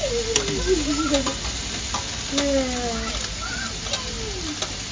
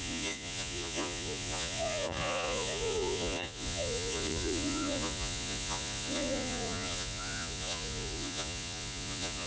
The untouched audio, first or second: first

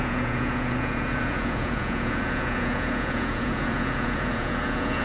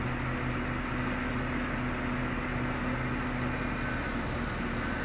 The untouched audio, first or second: second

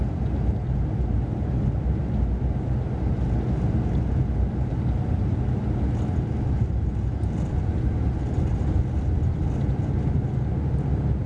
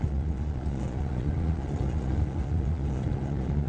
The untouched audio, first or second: first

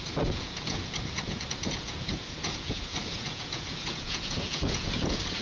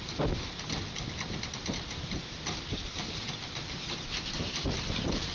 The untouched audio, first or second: second